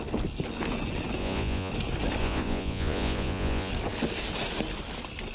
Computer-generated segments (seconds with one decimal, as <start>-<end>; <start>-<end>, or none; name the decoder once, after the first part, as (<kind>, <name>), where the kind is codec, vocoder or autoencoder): 1.2-1.7 (vocoder, Vocos); 2.2-3.7